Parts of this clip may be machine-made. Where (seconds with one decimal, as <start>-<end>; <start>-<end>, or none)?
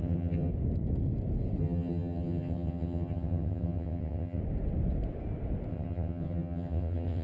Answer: 0.0-0.5; 1.6-4.4; 5.7-7.2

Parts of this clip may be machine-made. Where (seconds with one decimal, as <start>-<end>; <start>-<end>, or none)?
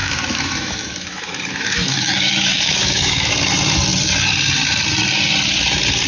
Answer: 0.0-3.3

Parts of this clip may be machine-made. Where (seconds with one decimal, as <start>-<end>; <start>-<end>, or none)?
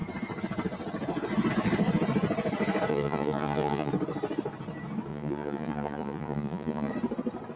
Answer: 2.9-3.9; 5.1-6.9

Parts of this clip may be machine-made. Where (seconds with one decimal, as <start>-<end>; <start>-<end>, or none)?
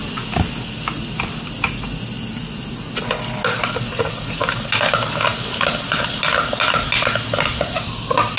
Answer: 3.9-4.4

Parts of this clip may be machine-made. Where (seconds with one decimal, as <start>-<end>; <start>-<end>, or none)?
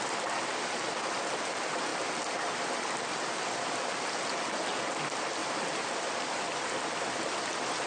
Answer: 1.9-3.7; 5.4-7.9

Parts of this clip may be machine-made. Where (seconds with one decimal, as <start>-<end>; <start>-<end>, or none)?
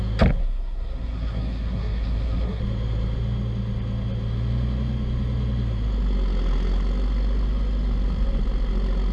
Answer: 0.4-2.6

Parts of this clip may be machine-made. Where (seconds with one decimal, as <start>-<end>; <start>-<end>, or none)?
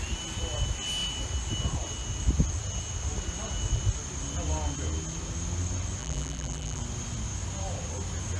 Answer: 6.0-6.8